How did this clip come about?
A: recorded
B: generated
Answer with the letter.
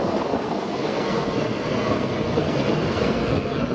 B